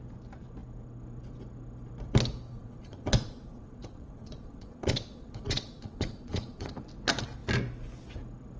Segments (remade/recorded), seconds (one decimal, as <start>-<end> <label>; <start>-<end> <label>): 0.0-2.5 recorded; 2.5-6.8 remade; 6.8-8.6 recorded